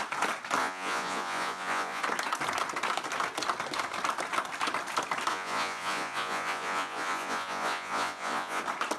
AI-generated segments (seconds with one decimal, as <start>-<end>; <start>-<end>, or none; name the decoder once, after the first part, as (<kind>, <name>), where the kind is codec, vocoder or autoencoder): 0.6-2.0 (vocoder, Vocos); 5.3-8.6